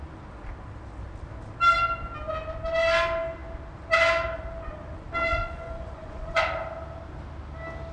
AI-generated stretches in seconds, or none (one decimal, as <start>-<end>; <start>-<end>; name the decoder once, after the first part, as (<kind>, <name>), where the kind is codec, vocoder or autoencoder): 5.3-6.5 (vocoder, Vocos)

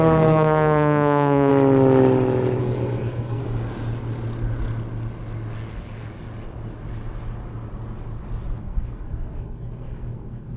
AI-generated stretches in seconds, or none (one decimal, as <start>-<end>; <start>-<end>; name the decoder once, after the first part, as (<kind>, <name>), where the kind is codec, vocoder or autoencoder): 0.0-1.5 (codec, SNAC); 2.6-3.4; 8.6-10.6

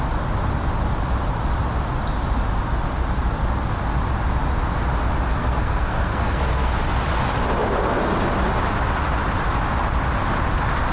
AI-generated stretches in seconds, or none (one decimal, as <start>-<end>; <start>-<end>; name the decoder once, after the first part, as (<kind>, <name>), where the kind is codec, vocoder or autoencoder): 5.3-6.7 (codec, SNAC)

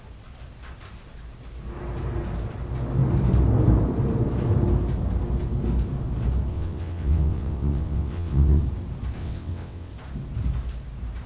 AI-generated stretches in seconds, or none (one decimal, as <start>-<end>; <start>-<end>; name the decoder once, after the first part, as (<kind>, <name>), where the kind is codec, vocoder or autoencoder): 6.5-8.6 (vocoder, WaveNeXt); 9.2-9.9

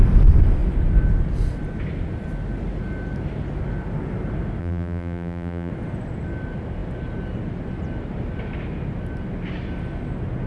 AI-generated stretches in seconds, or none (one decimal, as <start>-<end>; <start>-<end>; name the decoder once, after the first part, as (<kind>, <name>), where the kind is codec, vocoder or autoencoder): 4.6-5.7 (vocoder, BigVGAN v2)